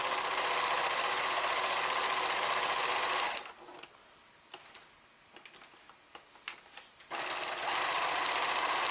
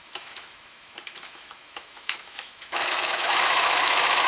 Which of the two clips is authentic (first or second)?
first